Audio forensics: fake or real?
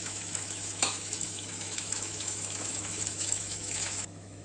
fake